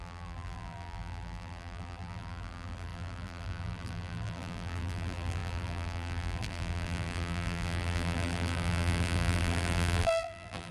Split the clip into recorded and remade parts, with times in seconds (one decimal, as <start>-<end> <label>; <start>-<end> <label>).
0.0-10.7 remade